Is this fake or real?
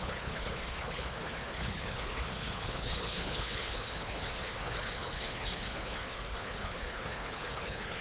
fake